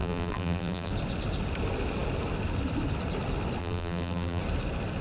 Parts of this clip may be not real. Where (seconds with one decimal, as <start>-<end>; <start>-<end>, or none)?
0.0-0.9; 3.6-4.4